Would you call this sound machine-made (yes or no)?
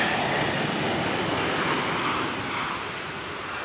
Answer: no